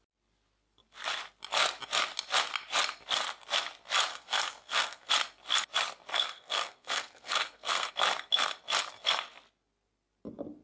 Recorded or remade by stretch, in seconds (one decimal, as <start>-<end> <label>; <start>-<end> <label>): 0.0-4.1 recorded; 4.1-5.1 remade; 5.1-6.1 recorded; 6.1-7.9 remade; 7.9-10.6 recorded